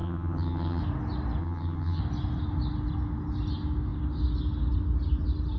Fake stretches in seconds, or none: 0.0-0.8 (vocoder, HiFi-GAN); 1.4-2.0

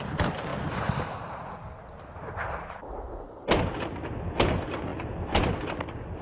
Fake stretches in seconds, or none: none

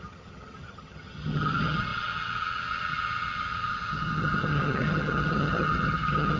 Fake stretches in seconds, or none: 0.0-6.4 (vocoder, HiFi-GAN)

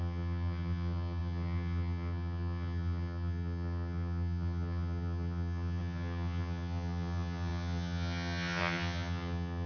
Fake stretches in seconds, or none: 0.0-9.7 (vocoder, HiFi-GAN)

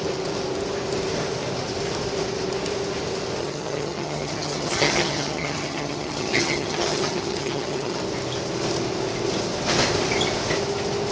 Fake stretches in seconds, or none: 3.4-8.0 (vocoder, HiFi-GAN)

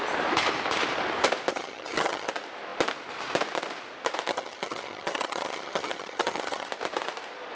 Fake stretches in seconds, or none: 1.5-2.3 (vocoder, HiFi-GAN); 4.3-6.7